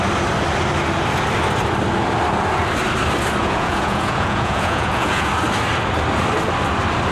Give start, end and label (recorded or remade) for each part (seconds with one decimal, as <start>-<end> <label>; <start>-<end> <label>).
0.0-3.4 recorded; 3.4-5.3 remade; 5.3-7.1 recorded